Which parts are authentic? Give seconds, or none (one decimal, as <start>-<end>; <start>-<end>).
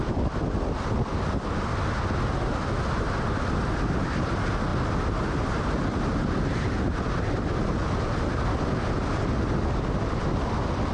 0.0-10.9